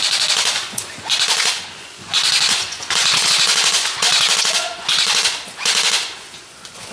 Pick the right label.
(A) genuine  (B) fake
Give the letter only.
B